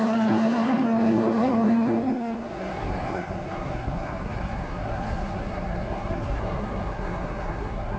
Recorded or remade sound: remade